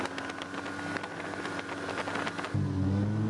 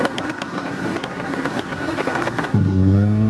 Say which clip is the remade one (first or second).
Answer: second